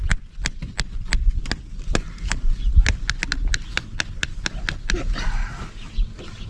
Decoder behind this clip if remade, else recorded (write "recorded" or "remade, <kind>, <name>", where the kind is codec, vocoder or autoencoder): recorded